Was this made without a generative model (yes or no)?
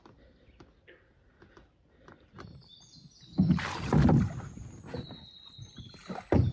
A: yes